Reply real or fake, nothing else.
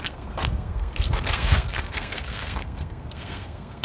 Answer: fake